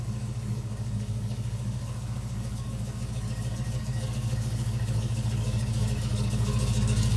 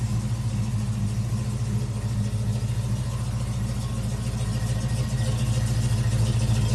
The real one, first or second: second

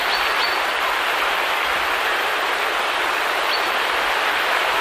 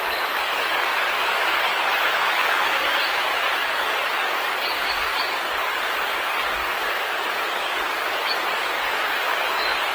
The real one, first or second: first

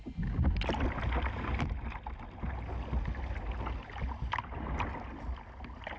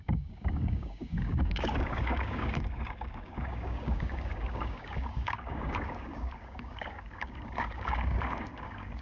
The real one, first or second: first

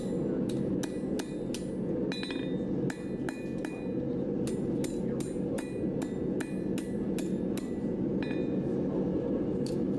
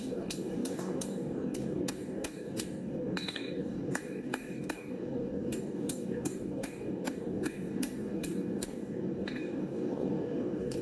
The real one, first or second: first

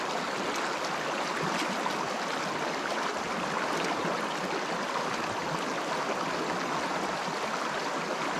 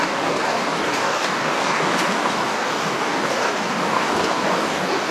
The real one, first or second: first